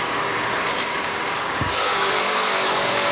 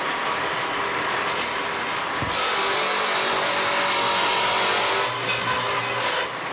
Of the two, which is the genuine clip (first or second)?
second